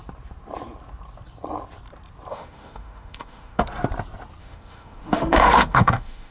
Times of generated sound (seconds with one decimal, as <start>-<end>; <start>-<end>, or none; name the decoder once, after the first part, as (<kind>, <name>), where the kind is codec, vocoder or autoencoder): 2.3-3.6 (autoencoder, DAC-VAE); 4.4-6.3